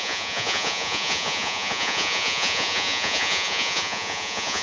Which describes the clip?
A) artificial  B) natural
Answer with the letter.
A